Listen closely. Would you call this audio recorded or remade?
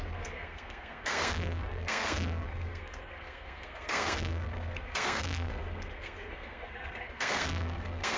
remade